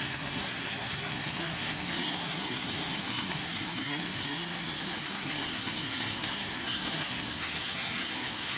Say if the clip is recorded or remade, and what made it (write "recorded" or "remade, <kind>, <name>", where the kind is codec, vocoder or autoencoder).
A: remade, codec, SNAC